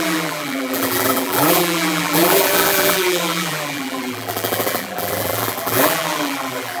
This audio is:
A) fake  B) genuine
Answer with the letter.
A